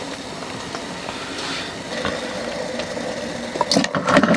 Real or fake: real